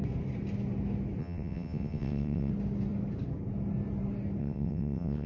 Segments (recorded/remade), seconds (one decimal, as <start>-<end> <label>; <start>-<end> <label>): 0.0-1.2 recorded; 1.2-2.5 remade; 2.5-4.4 recorded; 4.4-5.3 remade